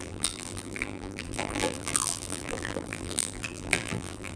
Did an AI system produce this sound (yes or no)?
yes